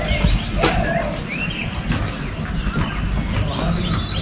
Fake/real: real